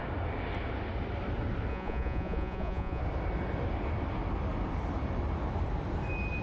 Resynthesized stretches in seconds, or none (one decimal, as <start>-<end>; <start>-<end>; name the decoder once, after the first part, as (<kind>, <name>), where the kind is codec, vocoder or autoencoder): 1.7-3.0 (vocoder, Vocos)